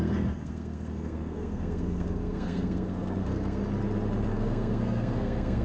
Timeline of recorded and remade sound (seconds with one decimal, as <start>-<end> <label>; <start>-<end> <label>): 0.0-3.6 remade; 3.6-4.3 recorded; 4.3-5.6 remade